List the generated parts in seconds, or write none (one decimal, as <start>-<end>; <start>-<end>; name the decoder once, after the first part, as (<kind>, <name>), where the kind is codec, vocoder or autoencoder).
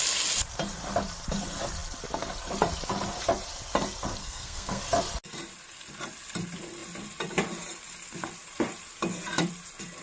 4.2-4.8 (codec, SNAC)